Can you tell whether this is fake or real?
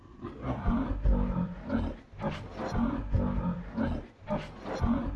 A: real